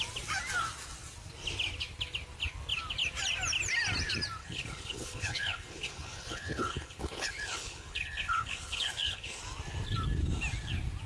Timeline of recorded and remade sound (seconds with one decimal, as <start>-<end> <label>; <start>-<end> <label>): 0.0-4.4 recorded; 4.4-9.4 remade; 9.4-11.1 recorded